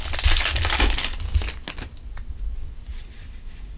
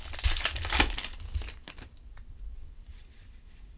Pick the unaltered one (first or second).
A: first